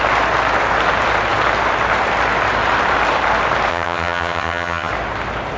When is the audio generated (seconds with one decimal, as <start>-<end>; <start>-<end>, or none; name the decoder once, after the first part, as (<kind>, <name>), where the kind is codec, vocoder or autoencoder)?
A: 3.7-4.9 (vocoder, HiFi-GAN)